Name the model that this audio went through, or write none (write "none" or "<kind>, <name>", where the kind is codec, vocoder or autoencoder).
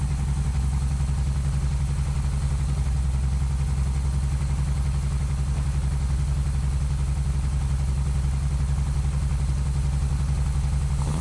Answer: none